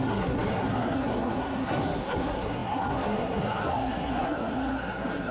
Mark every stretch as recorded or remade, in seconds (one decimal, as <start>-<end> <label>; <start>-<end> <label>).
0.0-5.3 remade